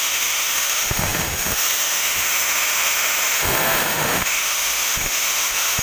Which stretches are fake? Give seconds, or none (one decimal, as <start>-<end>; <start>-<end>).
0.0-5.8